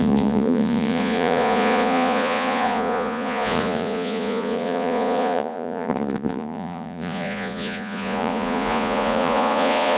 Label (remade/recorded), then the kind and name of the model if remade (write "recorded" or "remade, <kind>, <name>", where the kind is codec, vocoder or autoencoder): remade, vocoder, Vocos